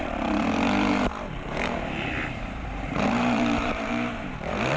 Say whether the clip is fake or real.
fake